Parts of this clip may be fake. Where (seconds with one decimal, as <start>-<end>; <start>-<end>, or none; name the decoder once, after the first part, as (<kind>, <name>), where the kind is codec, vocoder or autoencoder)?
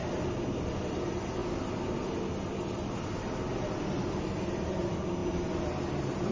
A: 0.0-0.9 (vocoder, BigVGAN v2)